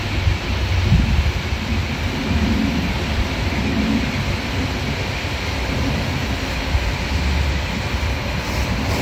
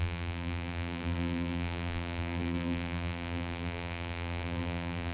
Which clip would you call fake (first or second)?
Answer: second